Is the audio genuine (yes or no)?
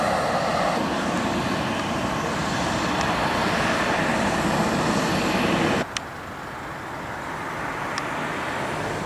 yes